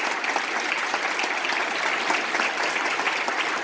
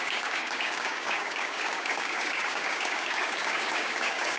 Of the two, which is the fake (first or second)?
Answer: second